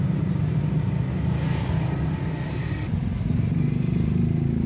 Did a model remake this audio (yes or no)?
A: no